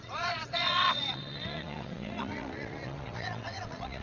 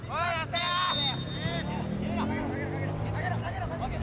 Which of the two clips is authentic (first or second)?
second